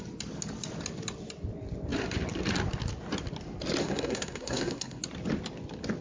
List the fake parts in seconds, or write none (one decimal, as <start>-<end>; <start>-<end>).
3.8-5.0